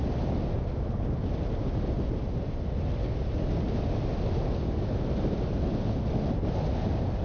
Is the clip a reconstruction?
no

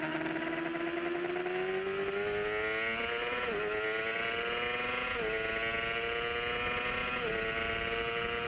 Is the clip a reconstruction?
no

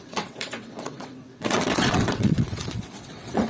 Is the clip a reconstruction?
yes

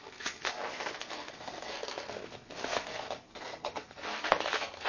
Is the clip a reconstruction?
yes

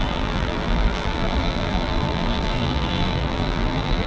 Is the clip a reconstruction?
yes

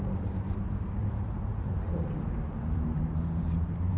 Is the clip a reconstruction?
yes